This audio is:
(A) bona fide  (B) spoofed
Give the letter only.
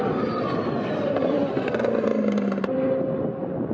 A